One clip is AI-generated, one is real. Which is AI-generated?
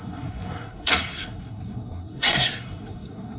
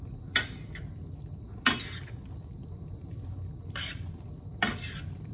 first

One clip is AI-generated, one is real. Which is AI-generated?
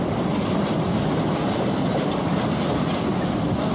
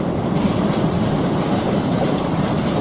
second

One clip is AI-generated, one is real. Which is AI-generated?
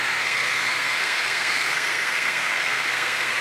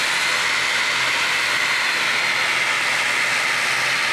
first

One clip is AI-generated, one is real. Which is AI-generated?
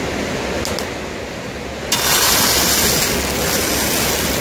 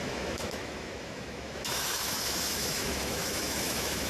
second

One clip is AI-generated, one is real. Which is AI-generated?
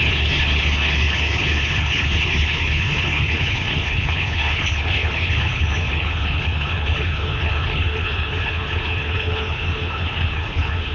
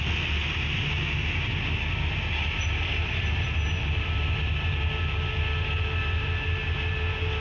first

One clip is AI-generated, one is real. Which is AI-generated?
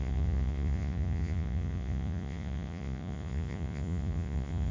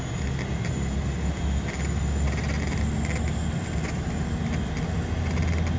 first